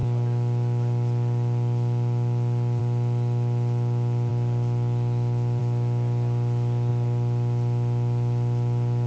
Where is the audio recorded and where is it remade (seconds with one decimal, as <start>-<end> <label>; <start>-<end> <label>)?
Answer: 0.0-9.1 recorded